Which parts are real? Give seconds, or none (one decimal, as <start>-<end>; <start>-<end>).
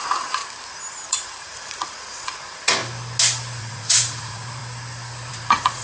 0.4-1.1; 2.8-3.6; 4.6-5.3